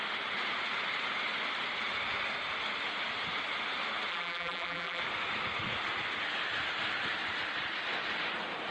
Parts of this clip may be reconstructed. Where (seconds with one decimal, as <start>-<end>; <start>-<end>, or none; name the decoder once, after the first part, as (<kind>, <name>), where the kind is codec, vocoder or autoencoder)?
4.1-5.0 (vocoder, BigVGAN v2)